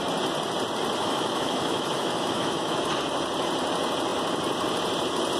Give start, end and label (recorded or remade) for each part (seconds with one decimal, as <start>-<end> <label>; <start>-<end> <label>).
0.0-1.0 recorded; 1.0-2.9 remade; 2.9-5.4 recorded